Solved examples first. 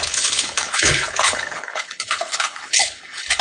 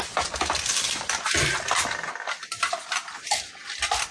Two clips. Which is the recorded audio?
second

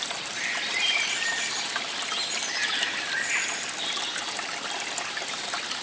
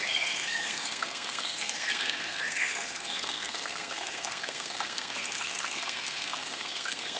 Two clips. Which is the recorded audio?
first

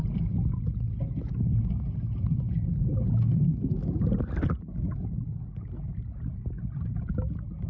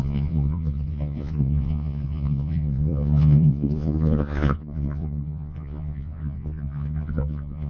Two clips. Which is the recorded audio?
first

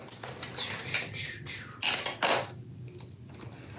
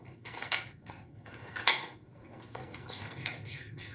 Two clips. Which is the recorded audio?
first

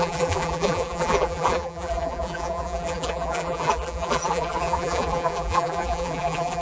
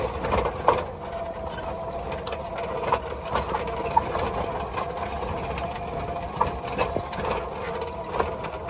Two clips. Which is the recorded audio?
second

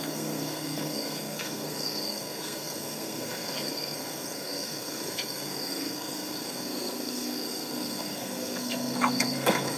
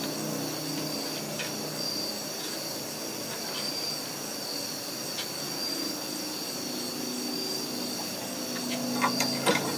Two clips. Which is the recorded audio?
second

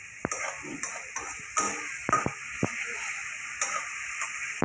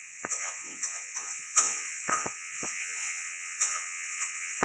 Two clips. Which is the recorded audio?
first